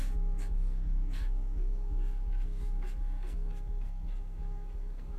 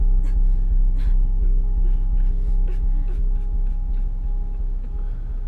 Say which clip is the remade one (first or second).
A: first